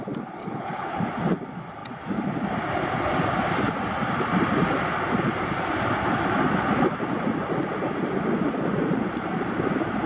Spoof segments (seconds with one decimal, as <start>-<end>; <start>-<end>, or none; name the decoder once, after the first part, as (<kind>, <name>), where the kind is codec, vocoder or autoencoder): 0.4-1.0 (codec, HILCodec)